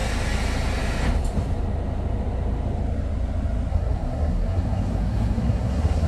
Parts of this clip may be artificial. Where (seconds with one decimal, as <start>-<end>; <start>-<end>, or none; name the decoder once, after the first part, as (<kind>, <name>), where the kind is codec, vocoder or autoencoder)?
3.7-6.1 (codec, SNAC)